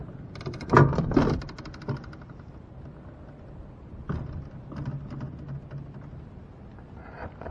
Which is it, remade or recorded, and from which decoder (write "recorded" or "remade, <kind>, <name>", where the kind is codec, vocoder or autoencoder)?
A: recorded